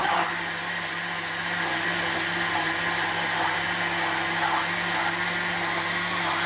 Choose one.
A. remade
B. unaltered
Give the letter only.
B